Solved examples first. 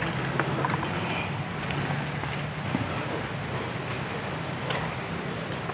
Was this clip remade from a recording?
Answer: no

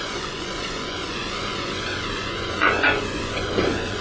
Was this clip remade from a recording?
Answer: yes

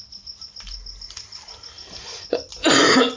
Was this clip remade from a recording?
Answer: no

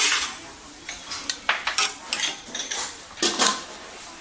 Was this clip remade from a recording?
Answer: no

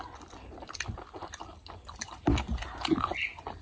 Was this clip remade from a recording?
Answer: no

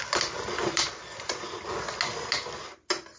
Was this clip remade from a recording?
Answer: no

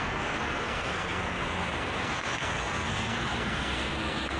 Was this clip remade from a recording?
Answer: yes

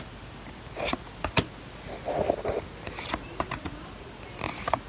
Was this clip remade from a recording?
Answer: no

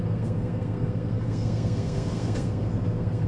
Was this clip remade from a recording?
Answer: yes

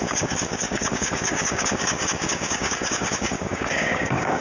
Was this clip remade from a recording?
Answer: yes